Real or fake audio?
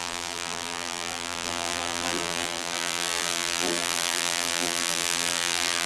fake